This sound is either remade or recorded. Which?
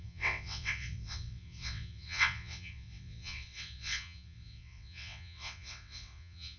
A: remade